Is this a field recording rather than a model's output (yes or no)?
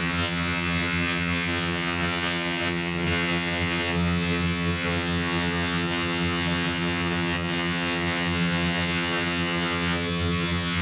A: no